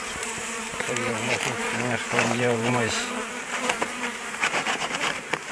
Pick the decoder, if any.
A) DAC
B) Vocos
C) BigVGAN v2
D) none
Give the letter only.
C